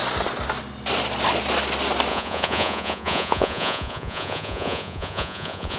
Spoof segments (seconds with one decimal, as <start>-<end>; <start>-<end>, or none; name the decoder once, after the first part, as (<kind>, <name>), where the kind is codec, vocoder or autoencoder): 2.1-5.8 (vocoder, Vocos)